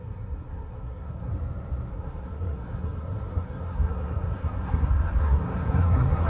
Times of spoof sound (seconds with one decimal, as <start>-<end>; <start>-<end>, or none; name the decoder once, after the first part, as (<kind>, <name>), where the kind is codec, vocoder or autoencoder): 0.0-1.3 (codec, SNAC); 1.9-6.3

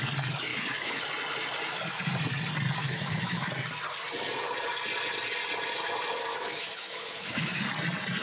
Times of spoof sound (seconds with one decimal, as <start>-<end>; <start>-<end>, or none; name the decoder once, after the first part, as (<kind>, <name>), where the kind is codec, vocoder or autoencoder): 0.5-1.0 (autoencoder, DAC-VAE); 2.8-3.5; 6.3-7.6

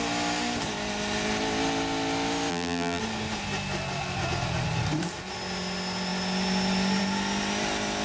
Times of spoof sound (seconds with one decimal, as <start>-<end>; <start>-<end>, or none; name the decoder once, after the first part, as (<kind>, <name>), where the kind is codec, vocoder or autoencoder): 2.5-3.0 (vocoder, BigVGAN v2)

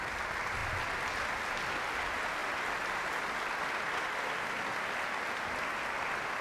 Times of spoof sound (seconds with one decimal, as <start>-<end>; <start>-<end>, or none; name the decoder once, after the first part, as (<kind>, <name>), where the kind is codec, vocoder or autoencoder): none

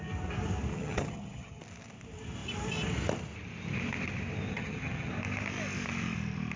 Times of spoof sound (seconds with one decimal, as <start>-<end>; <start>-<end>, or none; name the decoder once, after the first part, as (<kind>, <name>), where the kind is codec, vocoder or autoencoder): 0.7-1.6 (vocoder, HiFi-GAN); 4.5-5.1

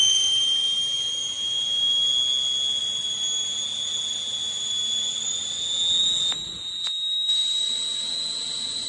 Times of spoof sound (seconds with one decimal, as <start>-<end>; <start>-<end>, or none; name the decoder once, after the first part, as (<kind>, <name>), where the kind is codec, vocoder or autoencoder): none

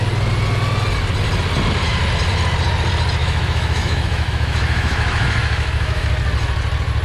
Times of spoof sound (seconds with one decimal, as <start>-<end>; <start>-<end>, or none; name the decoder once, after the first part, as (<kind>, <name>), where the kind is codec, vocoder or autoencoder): 3.2-6.1 (autoencoder, DAC-VAE)